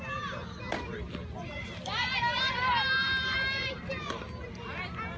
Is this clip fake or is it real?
real